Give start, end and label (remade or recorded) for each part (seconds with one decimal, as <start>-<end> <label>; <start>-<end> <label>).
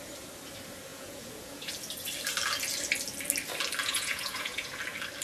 0.0-0.9 recorded; 0.9-1.7 remade; 1.7-3.8 recorded; 3.8-4.8 remade; 4.8-5.2 recorded